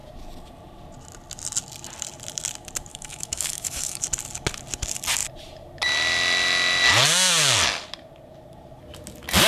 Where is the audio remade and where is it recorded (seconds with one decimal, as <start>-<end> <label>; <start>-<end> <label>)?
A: 0.0-2.9 recorded; 2.9-4.0 remade; 4.0-9.5 recorded

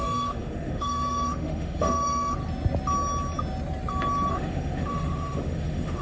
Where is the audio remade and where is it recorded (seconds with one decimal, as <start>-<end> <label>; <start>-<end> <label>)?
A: 0.0-2.4 remade; 2.4-4.3 recorded; 4.3-6.0 remade

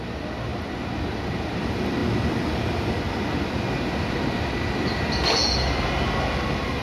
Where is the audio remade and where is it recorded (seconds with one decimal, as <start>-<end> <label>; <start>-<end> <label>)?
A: 0.0-6.8 recorded

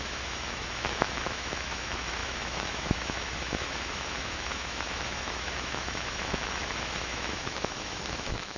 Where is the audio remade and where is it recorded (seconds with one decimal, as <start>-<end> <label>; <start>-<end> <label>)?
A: 0.0-8.6 remade

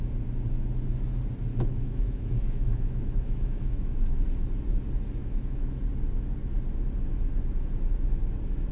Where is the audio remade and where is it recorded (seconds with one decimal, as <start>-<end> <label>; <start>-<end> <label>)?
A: 0.0-1.5 recorded; 1.5-4.1 remade; 4.1-5.2 recorded; 5.2-5.8 remade; 5.8-8.7 recorded

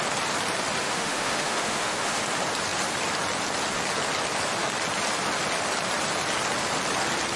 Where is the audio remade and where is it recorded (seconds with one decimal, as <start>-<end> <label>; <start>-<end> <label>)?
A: 0.0-0.8 recorded; 0.8-2.2 remade; 2.2-7.4 recorded

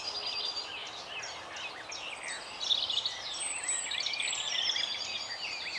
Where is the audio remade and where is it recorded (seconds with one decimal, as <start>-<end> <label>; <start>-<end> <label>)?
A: 0.0-5.8 recorded

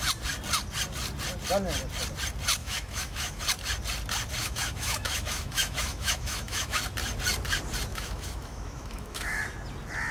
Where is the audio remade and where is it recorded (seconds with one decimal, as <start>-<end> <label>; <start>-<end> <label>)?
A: 0.0-2.6 recorded; 2.6-3.4 remade; 3.4-4.4 recorded; 4.4-6.8 remade; 6.8-7.9 recorded; 7.9-9.4 remade; 9.4-10.1 recorded